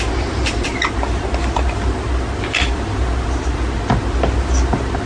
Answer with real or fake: real